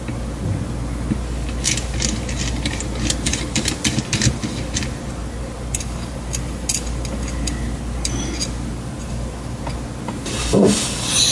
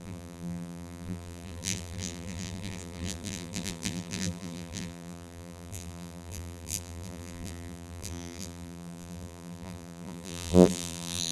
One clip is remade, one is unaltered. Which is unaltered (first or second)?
first